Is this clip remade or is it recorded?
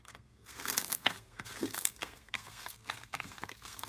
remade